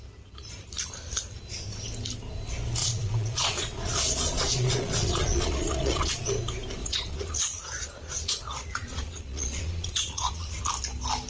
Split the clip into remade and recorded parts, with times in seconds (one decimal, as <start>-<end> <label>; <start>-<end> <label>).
0.0-2.8 recorded; 2.8-6.3 remade; 6.3-6.8 recorded; 6.8-10.6 remade; 10.6-11.3 recorded